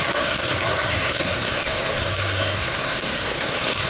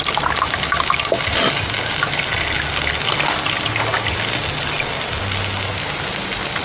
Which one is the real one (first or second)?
second